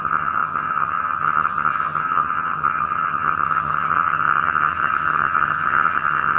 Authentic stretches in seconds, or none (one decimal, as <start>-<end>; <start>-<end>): none